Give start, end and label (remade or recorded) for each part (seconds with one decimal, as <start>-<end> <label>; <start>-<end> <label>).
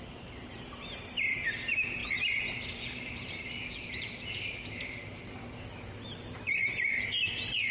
0.0-7.7 remade